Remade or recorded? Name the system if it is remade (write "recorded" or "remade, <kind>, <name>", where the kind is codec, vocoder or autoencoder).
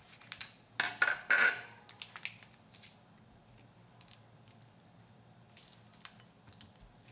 recorded